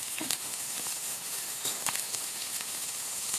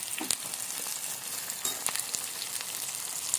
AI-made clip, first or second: first